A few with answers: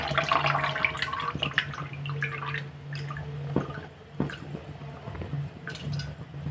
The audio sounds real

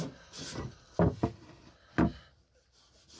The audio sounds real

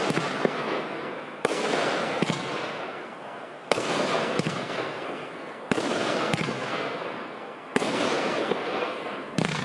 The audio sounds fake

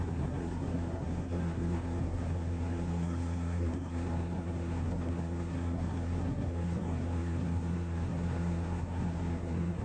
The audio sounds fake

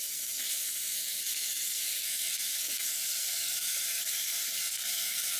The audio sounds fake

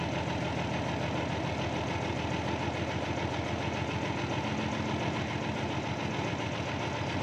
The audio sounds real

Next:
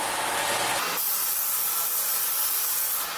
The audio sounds real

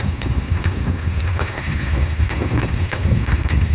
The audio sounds fake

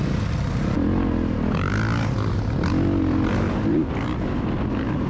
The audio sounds real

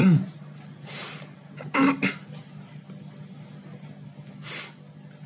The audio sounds real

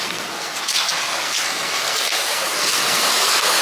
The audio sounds fake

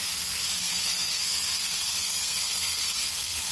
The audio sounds fake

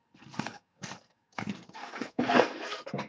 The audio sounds fake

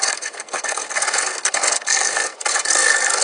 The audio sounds fake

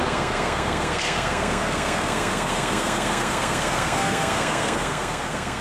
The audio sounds fake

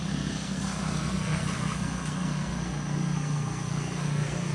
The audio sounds fake